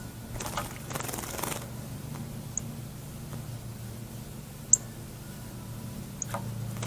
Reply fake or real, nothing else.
real